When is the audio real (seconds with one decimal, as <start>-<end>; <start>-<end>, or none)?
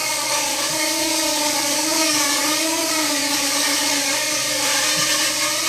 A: 4.7-5.7